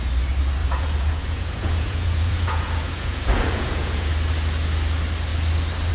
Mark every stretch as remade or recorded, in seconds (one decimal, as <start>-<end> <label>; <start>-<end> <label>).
0.0-0.6 recorded; 0.6-4.1 remade; 4.1-5.9 recorded